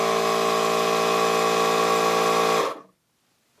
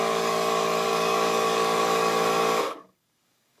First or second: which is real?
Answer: first